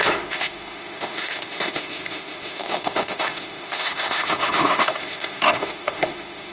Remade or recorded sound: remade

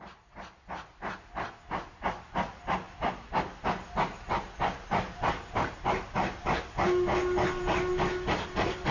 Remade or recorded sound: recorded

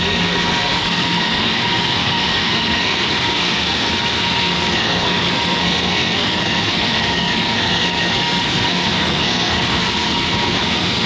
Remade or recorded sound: remade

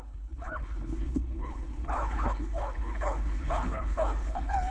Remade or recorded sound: remade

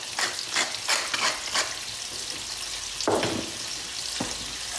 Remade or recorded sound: recorded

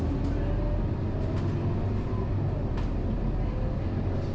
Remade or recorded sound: recorded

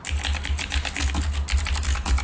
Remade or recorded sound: recorded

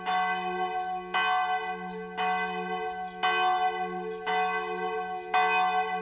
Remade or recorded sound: recorded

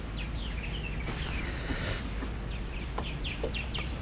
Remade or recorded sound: recorded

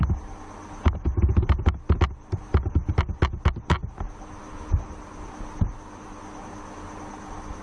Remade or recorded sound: recorded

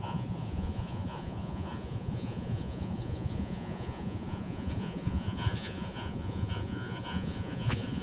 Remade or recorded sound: remade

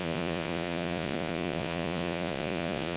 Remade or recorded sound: remade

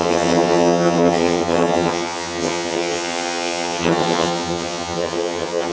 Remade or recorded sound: remade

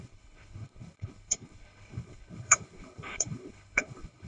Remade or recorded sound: remade